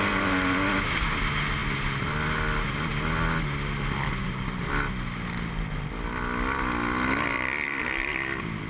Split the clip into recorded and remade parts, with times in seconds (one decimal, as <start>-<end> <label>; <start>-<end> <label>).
0.0-8.7 recorded